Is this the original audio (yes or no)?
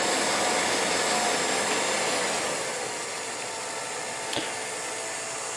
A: yes